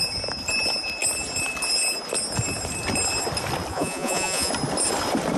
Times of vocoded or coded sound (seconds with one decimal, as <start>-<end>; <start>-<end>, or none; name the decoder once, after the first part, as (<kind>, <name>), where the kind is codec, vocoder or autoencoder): 3.7-4.5 (vocoder, Vocos)

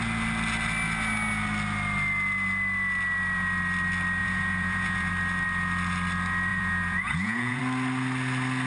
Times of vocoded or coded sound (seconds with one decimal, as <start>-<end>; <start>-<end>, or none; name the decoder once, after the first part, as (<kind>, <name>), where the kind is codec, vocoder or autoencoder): 4.2-5.1 (vocoder, Vocos); 6.5-7.6

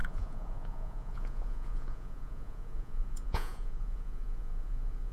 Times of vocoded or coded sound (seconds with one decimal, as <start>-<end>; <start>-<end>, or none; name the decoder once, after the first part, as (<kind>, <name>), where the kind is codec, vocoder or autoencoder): 0.0-5.1 (vocoder, Vocos)

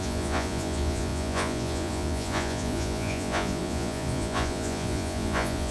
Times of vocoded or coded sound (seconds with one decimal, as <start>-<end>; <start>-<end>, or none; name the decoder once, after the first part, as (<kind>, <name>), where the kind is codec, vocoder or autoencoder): 0.0-5.7 (vocoder, Vocos)

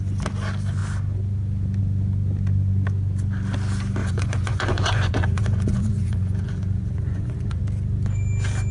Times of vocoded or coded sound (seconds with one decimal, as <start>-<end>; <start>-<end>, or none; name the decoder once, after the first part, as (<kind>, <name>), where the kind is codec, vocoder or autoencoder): 4.0-7.6 (vocoder, Vocos)

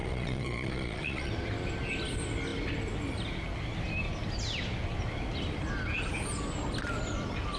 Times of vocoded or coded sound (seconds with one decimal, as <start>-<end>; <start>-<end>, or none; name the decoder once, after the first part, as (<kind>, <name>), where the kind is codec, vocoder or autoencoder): 0.0-1.3 (vocoder, Vocos)

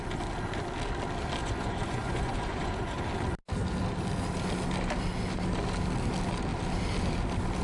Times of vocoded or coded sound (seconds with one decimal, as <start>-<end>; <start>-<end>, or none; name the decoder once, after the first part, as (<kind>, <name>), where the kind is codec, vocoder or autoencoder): 1.4-3.0 (vocoder, Vocos)